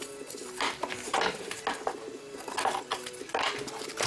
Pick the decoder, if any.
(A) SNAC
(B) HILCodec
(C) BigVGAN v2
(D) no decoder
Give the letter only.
D